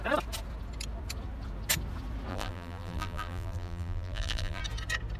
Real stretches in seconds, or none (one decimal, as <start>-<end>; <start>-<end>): 0.0-2.3; 4.6-5.2